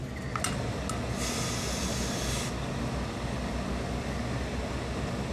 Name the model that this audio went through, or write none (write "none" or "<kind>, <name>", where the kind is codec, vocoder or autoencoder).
none